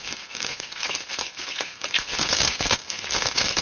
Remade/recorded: remade